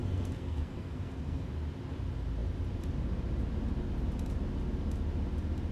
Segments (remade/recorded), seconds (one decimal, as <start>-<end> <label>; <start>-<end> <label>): 0.0-1.5 remade; 1.5-5.7 recorded